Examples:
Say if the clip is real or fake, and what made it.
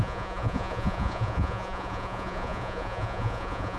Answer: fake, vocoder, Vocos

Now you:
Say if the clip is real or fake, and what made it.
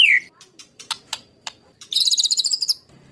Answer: fake, vocoder, BigVGAN v2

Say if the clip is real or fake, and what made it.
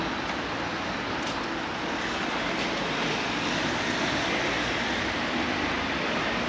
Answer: real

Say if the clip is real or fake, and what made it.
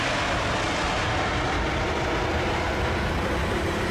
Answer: real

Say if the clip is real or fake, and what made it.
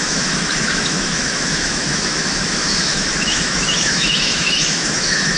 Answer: fake, autoencoder, DAC-VAE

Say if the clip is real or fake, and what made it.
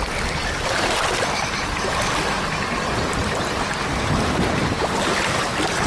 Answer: real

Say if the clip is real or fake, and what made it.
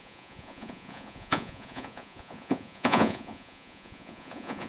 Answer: fake, vocoder, Vocos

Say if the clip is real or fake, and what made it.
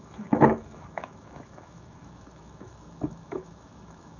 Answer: fake, autoencoder, DAC-VAE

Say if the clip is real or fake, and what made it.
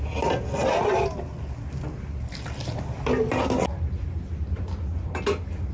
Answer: real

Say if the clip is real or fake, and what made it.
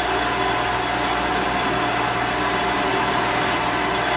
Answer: real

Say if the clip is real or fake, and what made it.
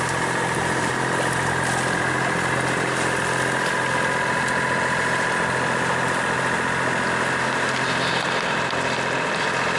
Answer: real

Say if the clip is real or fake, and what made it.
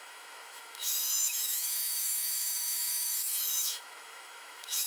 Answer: fake, autoencoder, DAC-VAE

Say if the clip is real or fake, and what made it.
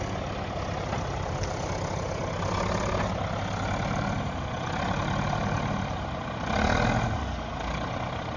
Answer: real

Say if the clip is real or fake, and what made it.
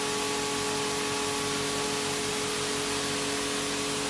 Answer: real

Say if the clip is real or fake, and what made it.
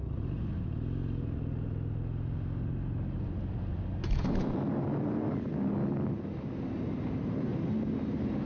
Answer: real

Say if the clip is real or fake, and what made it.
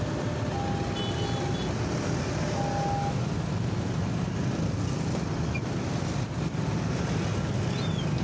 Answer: real